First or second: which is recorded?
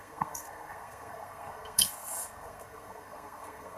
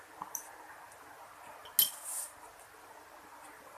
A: second